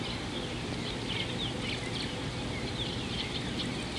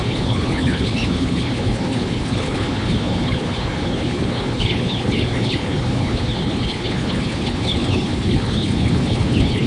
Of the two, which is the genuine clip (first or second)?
first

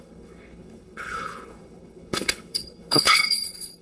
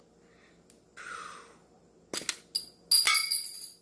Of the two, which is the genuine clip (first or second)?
second